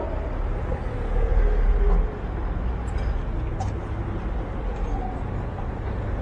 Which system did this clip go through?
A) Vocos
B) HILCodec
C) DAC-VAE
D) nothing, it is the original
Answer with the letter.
D